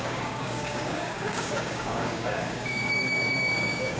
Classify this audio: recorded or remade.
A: remade